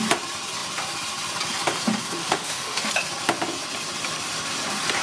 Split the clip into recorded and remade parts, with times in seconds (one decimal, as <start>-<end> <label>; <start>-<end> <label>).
0.0-2.2 recorded; 2.2-2.9 remade; 2.9-5.0 recorded